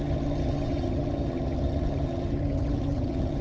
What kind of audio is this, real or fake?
fake